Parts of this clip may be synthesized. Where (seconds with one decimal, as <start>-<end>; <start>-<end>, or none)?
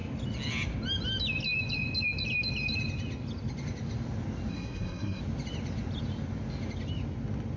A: 4.5-5.2